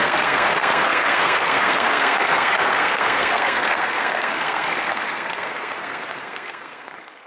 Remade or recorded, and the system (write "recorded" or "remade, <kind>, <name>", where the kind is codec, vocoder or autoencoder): remade, codec, SNAC